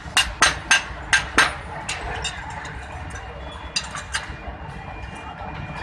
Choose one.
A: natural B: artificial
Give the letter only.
A